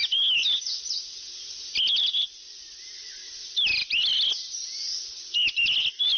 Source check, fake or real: real